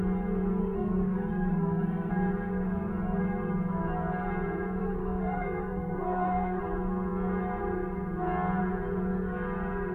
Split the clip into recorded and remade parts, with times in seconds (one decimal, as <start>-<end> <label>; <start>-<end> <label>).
0.0-0.6 recorded; 0.6-2.1 remade; 2.1-4.8 recorded; 4.8-6.6 remade; 6.6-9.9 recorded